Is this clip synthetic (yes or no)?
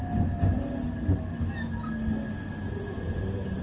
no